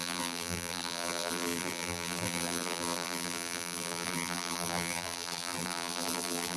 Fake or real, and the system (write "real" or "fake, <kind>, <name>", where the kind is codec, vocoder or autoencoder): fake, vocoder, BigVGAN v2